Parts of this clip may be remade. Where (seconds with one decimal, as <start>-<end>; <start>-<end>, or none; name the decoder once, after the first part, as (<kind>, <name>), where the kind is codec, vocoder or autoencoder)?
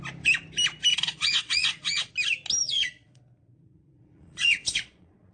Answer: 0.9-2.1 (vocoder, Vocos); 2.6-5.3